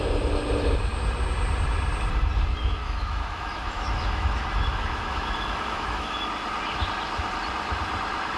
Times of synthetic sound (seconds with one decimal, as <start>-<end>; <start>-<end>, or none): 2.8-6.3

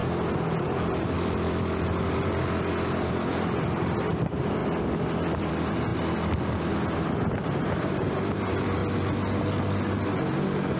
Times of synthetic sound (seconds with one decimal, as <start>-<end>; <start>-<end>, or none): 0.6-5.9; 7.6-8.8

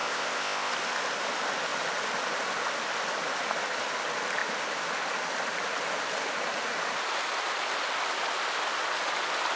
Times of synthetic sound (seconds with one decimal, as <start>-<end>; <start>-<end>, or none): 0.0-0.7